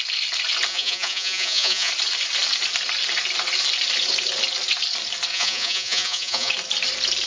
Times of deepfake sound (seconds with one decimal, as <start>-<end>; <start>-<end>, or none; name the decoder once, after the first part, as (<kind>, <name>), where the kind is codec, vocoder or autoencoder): 0.7-1.9 (vocoder, Vocos); 5.3-6.5